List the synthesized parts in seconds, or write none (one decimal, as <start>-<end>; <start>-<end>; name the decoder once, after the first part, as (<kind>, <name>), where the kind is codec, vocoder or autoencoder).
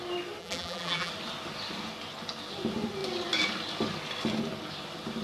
0.4-1.1 (vocoder, BigVGAN v2)